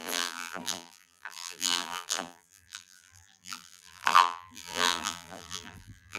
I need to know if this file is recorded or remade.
remade